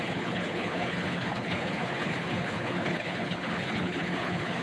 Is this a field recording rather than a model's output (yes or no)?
no